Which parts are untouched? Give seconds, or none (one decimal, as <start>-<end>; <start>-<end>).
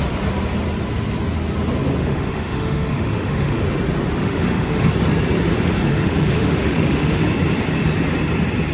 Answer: 0.0-2.0; 3.6-4.2; 4.9-5.9; 7.2-8.7